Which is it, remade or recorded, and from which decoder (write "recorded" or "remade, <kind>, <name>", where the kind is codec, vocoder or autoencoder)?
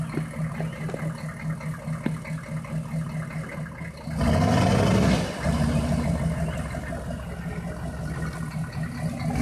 recorded